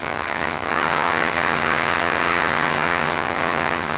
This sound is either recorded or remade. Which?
remade